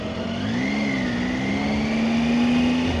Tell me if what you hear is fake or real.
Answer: real